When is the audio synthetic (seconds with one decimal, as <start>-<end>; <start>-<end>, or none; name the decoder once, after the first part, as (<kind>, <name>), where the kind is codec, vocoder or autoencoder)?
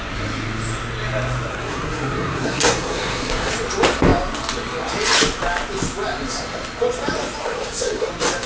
1.5-3.5 (codec, SNAC); 7.4-8.1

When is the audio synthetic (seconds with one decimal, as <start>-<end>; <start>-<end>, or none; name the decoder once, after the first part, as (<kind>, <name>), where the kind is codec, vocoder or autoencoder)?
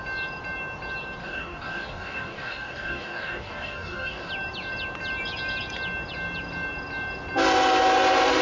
1.2-4.3 (codec, DAC)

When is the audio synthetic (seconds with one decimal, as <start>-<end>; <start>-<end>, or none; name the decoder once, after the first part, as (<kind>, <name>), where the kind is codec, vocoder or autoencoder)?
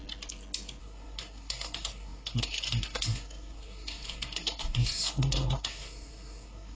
0.8-6.7 (codec, SNAC)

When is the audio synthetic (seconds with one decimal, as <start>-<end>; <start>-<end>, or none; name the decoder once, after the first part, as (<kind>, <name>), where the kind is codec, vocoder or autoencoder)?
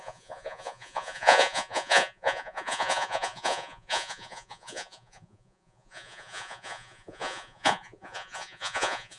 0.0-9.2 (vocoder, Vocos)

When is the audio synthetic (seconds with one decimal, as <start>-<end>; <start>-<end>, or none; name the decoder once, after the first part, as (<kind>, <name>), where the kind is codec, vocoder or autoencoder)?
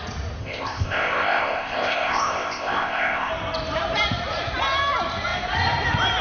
0.4-3.3 (codec, ZipCodec)